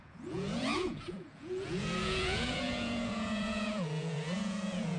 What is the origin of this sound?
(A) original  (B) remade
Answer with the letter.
B